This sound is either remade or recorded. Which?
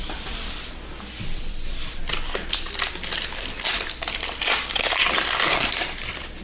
remade